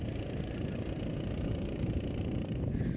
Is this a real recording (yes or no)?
yes